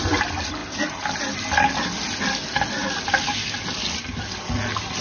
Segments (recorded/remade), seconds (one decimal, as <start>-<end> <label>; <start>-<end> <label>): 0.0-5.0 recorded

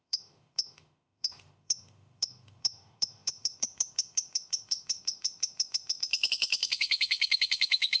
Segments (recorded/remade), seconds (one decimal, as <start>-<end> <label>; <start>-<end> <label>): 0.0-8.0 remade

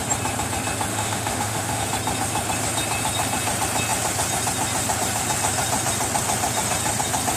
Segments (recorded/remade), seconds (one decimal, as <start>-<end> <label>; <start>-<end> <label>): 0.0-0.9 recorded; 0.9-1.8 remade; 1.8-7.4 recorded

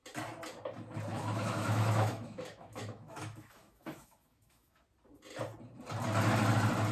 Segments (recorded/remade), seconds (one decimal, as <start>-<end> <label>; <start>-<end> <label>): 0.0-1.1 recorded; 1.1-4.8 remade; 4.8-6.9 recorded